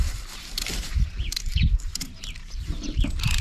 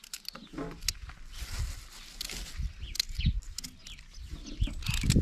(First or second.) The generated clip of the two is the first